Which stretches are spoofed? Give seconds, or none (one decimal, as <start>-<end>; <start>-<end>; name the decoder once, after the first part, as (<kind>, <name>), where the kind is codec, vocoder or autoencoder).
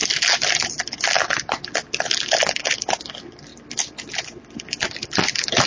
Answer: 1.5-5.7 (vocoder, BigVGAN v2)